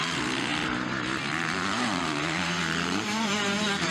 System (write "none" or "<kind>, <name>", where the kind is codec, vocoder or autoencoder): vocoder, BigVGAN v2